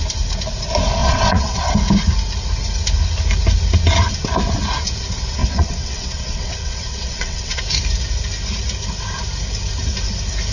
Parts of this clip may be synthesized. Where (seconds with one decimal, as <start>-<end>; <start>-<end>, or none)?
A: 1.0-1.7; 5.4-7.6

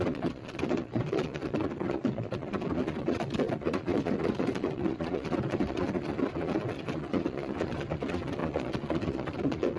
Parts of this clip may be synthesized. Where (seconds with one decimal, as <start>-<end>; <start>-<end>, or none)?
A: 0.0-9.8

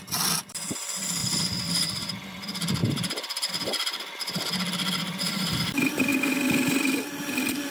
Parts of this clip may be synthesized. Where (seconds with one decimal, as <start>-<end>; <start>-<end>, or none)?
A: 0.0-1.2; 1.7-7.7